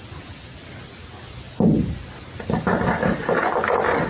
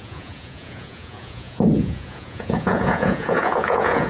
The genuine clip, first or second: first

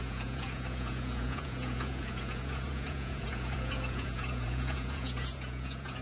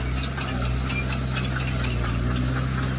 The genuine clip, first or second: second